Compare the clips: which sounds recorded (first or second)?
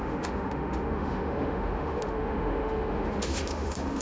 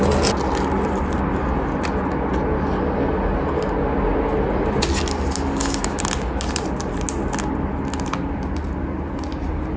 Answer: second